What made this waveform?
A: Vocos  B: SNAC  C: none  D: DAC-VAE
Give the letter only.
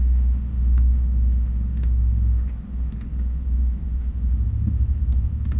D